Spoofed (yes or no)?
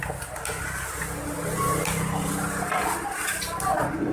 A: no